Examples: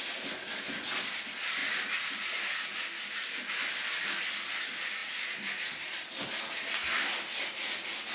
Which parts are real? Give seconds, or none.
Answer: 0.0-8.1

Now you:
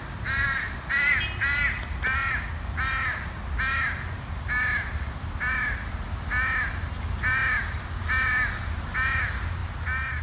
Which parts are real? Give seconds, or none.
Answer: 0.0-10.2

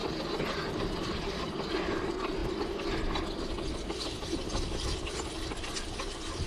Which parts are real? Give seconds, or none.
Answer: 1.7-2.4

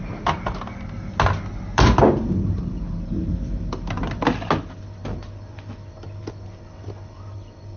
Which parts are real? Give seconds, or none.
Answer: 0.0-7.8

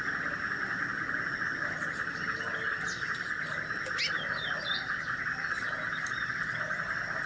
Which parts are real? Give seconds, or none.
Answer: 0.0-7.3

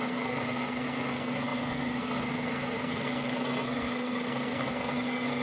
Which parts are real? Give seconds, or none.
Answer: none